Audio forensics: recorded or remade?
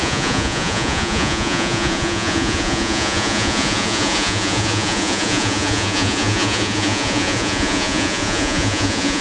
remade